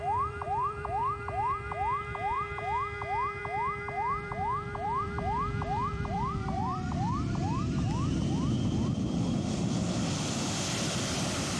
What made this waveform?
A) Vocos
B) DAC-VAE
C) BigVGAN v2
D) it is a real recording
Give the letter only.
C